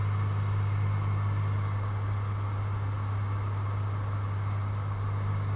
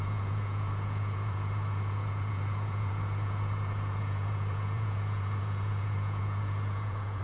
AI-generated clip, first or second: second